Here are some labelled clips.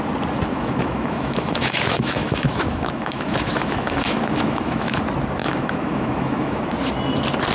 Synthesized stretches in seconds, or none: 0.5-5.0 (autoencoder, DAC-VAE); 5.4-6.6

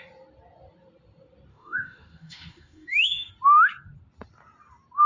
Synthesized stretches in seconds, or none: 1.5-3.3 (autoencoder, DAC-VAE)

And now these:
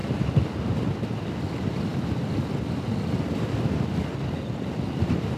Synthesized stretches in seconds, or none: none

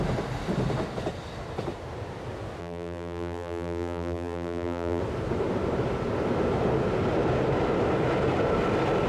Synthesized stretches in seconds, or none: 2.6-5.0 (vocoder, BigVGAN v2)

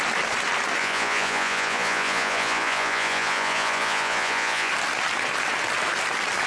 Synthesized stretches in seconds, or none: 0.8-4.7 (vocoder, Vocos)

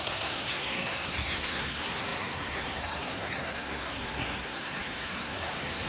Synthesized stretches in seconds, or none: 0.0-5.9 (codec, SNAC)